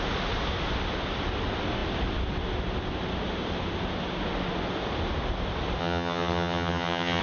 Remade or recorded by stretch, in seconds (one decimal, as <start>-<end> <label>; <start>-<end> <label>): 0.0-5.8 recorded; 5.8-7.2 remade